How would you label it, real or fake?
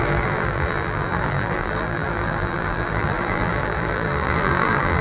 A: fake